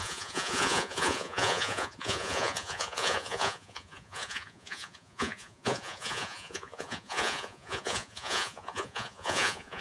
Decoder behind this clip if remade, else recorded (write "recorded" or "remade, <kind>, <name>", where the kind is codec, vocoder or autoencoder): remade, vocoder, Vocos